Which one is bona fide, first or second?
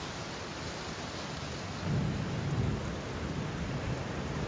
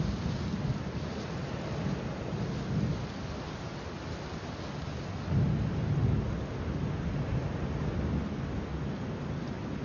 second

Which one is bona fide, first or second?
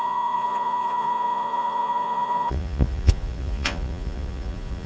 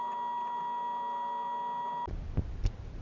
second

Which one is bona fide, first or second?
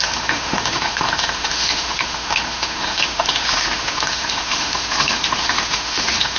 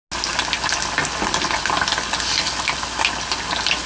second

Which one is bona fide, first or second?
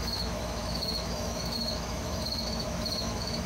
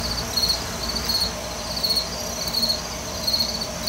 second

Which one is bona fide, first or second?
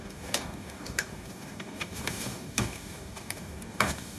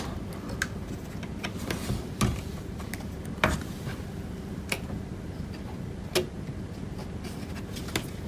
second